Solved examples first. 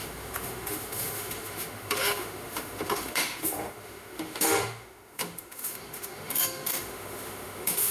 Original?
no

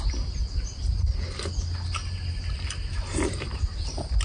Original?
yes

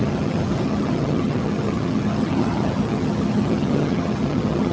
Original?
no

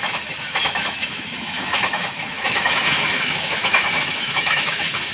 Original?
no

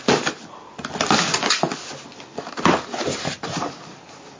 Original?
yes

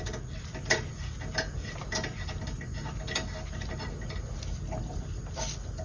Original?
yes